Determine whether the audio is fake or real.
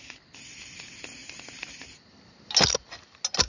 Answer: real